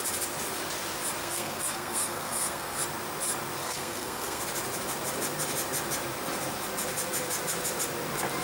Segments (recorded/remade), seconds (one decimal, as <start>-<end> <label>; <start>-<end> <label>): 0.0-1.2 recorded; 1.2-2.8 remade; 2.8-3.6 recorded; 3.6-4.4 remade; 4.4-8.4 recorded